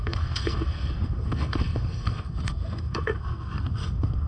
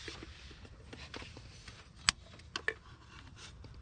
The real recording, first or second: second